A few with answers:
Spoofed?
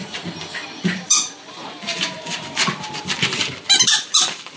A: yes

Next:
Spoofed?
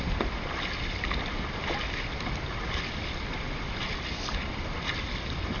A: no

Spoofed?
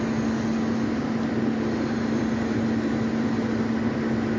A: no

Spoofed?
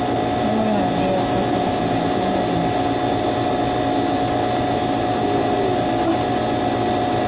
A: no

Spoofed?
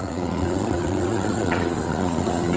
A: yes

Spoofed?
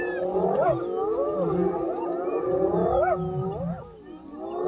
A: no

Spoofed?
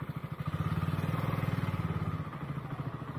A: no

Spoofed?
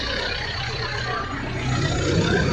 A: yes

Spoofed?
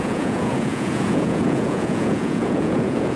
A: yes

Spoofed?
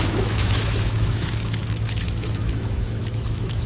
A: yes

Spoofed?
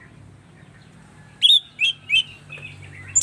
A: no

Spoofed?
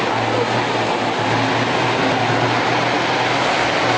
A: no